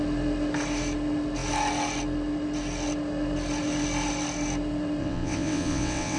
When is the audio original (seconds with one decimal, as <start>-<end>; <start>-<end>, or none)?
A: 0.0-5.0